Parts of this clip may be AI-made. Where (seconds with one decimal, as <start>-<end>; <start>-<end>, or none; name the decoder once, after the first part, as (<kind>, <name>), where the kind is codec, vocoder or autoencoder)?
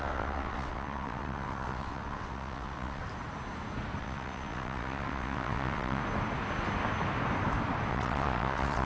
0.0-3.0 (vocoder, WaveNeXt); 4.0-6.0; 7.9-8.8